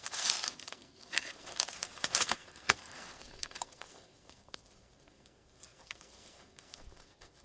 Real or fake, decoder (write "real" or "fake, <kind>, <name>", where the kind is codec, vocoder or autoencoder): fake, codec, SNAC